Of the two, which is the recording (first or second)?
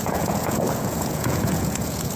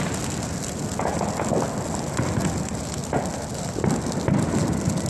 second